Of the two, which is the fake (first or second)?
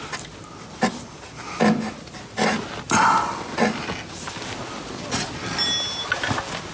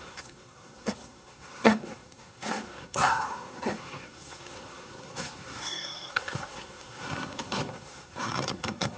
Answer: second